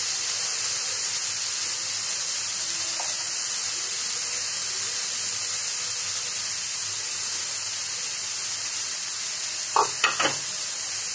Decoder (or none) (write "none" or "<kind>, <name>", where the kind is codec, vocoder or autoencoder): none